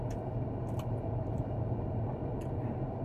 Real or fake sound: real